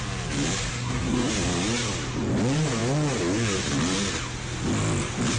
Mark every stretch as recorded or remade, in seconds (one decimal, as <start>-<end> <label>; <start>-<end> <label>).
0.0-0.7 recorded; 0.7-1.3 remade; 1.3-5.4 recorded